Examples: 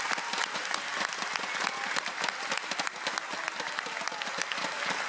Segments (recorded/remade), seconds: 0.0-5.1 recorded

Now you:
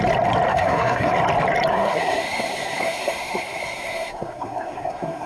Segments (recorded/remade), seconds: 0.0-0.5 recorded; 0.5-1.1 remade; 1.1-1.7 recorded; 1.7-5.3 remade

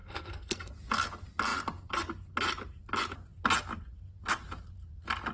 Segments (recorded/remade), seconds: 0.0-0.7 remade; 0.7-5.3 recorded